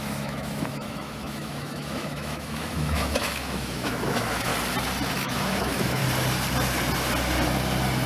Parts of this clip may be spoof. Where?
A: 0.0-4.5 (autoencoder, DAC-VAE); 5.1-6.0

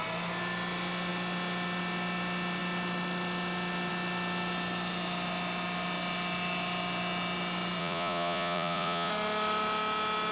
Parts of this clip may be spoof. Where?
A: 7.8-9.1 (vocoder, Vocos)

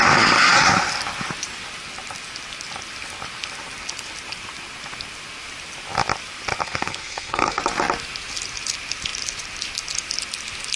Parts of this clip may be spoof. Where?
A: 6.6-7.6 (codec, SNAC)

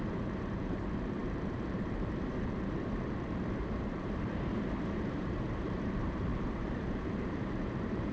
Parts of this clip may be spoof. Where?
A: 0.0-8.1 (vocoder, BigVGAN v2)

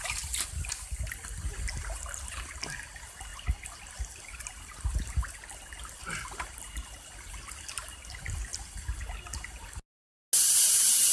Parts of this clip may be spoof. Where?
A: none

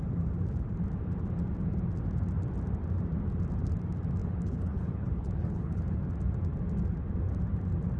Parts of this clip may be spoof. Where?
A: 4.2-6.0 (codec, HILCodec)

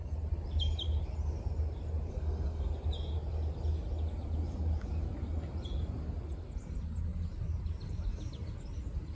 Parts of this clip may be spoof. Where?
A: 2.1-2.7 (codec, SNAC)